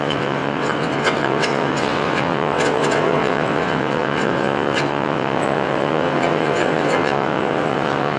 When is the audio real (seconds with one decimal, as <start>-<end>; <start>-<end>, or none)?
none